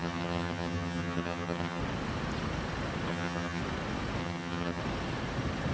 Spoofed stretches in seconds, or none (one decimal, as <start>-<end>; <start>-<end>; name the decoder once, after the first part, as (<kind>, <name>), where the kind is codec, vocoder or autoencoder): 0.0-1.8 (vocoder, HiFi-GAN); 3.1-3.6; 4.2-4.8